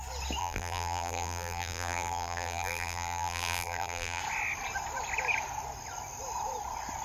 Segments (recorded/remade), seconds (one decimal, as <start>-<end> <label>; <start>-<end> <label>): 0.0-0.4 recorded; 0.4-4.2 remade; 4.2-7.0 recorded